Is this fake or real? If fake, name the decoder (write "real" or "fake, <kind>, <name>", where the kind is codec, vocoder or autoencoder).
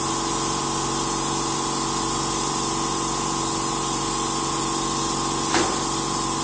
real